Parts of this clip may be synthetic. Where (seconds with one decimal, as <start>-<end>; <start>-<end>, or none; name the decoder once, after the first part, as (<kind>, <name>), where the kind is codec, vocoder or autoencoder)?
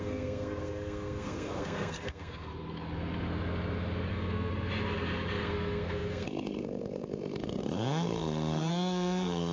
0.0-2.5 (codec, SNAC); 4.1-4.5; 5.3-9.5